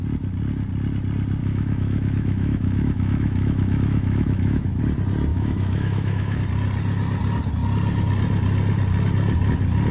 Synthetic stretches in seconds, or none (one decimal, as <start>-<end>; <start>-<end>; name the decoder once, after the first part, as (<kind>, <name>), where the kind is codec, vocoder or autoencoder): 1.4-4.8 (autoencoder, DAC-VAE); 5.3-6.4